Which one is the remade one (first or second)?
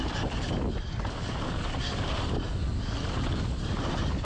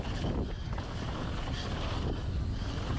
second